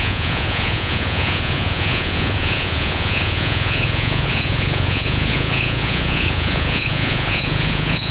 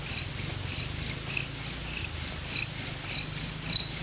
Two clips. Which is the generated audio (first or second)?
first